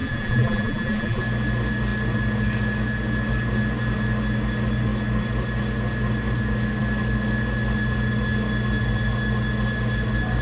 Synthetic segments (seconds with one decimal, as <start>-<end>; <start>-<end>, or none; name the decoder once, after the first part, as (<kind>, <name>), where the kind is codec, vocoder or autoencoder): 0.0-1.2 (vocoder, BigVGAN v2)